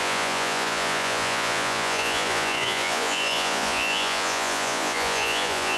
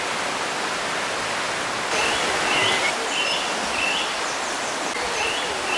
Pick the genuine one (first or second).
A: second